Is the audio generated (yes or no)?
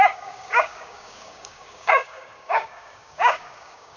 yes